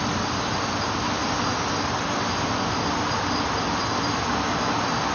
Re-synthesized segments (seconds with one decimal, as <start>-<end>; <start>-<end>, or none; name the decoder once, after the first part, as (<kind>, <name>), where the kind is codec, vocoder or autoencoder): none